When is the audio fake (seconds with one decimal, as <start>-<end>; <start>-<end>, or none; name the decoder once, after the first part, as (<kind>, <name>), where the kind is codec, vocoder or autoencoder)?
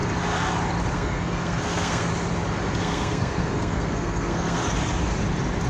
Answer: 0.9-2.1 (codec, SNAC); 2.8-4.6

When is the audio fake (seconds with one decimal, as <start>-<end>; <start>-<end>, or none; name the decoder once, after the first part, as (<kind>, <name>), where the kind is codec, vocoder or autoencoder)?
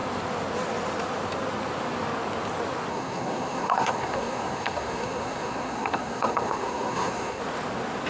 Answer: 2.9-7.4 (codec, SNAC)